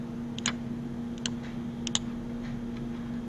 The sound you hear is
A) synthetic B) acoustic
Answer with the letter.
B